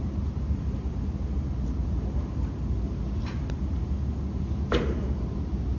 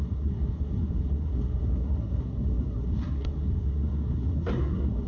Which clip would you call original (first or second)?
first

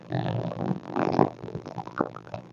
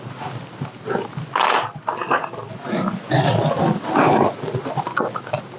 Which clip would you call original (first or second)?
second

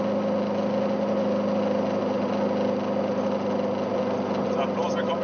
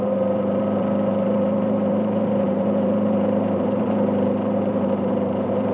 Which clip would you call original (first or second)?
first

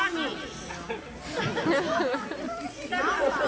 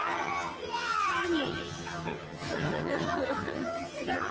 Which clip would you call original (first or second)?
first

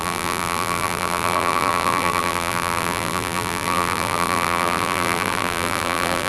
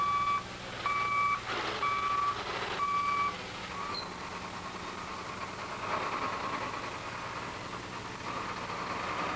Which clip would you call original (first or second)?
second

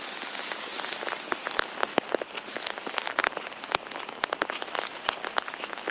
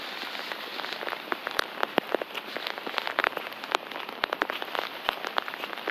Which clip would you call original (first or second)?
first